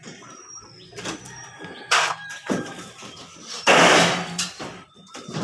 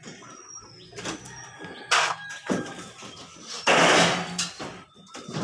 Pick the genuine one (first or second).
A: second